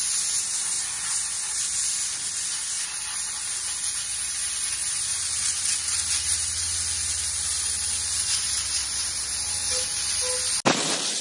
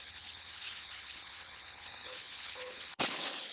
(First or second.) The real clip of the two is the first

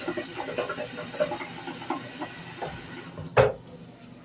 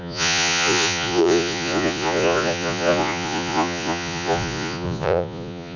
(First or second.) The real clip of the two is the first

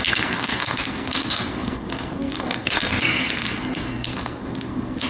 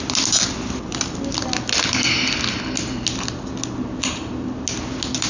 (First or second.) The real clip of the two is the second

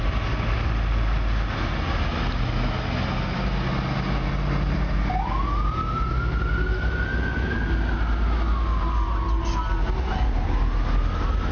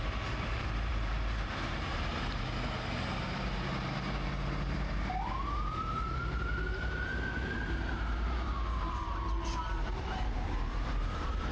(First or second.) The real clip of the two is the first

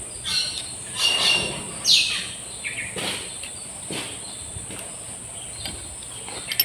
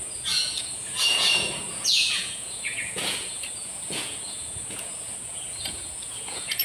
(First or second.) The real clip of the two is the first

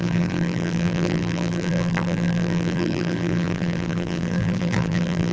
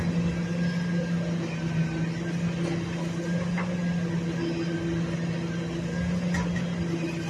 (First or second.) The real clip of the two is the second